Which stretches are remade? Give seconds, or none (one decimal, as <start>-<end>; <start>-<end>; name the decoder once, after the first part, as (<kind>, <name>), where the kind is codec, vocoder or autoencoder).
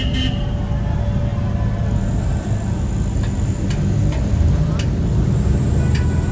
none